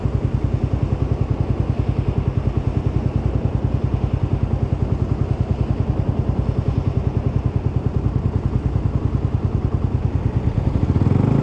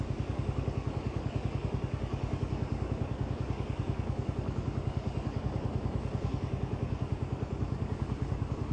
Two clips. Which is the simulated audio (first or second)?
second